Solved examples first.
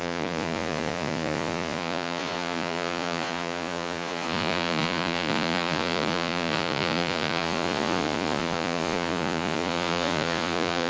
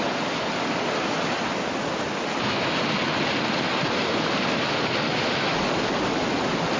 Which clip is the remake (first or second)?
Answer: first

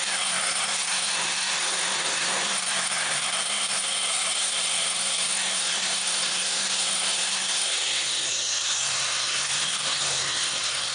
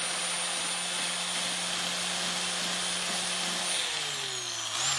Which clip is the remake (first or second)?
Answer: first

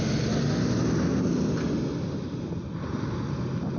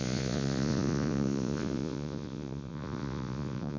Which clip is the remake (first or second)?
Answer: second